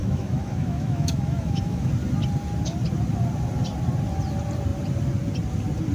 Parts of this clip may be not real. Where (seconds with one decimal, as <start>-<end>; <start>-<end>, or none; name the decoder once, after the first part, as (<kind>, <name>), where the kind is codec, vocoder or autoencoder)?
0.0-1.9 (autoencoder, DAC-VAE)